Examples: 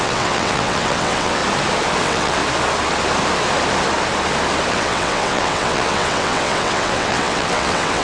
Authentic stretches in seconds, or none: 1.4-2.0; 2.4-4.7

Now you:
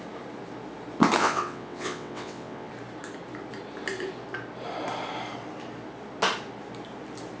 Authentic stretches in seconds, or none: 0.0-1.2; 2.7-7.4

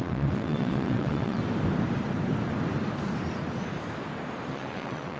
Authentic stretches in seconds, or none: 1.4-4.5